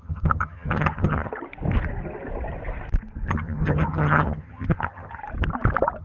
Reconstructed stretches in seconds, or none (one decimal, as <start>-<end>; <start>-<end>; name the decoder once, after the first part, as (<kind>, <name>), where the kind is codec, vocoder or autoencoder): 0.0-1.3 (vocoder, HiFi-GAN); 3.3-5.2

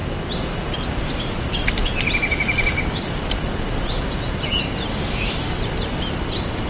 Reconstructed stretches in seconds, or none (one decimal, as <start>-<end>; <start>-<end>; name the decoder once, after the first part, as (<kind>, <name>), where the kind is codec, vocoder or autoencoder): 4.9-5.6 (autoencoder, DAC-VAE)

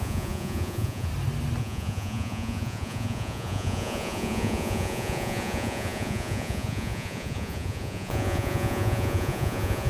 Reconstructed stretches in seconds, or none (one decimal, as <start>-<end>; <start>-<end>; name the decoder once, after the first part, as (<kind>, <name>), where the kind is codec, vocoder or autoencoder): 0.0-1.1 (vocoder, Vocos); 1.6-9.9

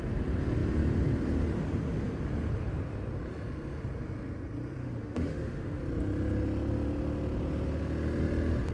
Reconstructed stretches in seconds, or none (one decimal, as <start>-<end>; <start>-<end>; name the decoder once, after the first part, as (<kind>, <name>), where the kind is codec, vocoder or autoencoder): 4.8-5.8 (autoencoder, DAC-VAE)

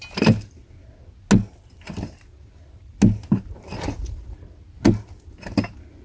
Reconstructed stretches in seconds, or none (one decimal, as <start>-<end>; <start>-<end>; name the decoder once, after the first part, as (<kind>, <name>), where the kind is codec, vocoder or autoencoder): none

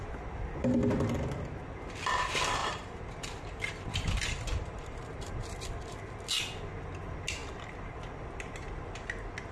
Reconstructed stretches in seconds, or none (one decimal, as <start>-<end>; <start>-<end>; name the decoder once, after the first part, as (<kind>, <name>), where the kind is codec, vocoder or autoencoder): 2.6-5.3 (vocoder, BigVGAN v2)